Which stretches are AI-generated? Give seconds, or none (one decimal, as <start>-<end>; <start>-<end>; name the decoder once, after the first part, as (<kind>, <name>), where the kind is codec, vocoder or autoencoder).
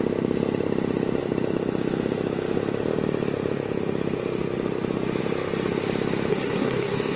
6.3-7.2 (codec, SNAC)